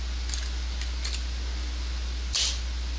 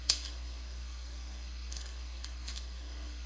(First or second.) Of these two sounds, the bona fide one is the first